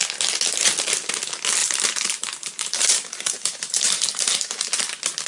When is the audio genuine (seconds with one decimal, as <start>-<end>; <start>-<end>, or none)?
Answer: 0.0-1.6; 4.8-5.3

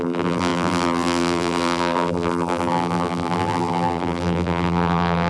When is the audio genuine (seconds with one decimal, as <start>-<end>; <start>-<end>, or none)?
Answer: none

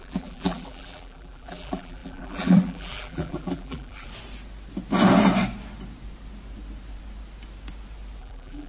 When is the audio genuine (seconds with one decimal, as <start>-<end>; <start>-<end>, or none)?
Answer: 4.1-8.2

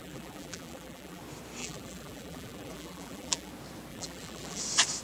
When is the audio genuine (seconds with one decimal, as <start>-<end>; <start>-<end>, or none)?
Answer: 1.2-1.6; 3.5-3.9; 4.6-5.0